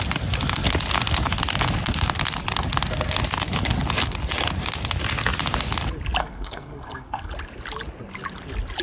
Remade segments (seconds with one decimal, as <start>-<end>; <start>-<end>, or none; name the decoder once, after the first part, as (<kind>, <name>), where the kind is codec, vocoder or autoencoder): 6.2-7.3 (codec, SNAC)